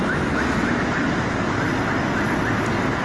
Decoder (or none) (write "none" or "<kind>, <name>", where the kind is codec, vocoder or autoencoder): none